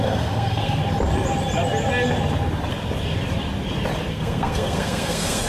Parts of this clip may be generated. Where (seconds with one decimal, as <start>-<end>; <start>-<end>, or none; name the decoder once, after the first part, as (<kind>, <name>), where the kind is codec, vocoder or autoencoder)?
0.0-0.8 (codec, SNAC); 4.1-5.5